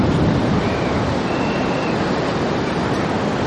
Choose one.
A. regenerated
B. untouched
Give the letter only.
B